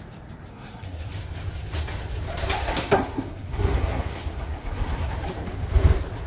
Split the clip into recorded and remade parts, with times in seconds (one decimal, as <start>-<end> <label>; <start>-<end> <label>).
0.0-0.5 recorded; 0.5-1.1 remade; 1.1-2.6 recorded; 2.6-5.1 remade; 5.1-6.3 recorded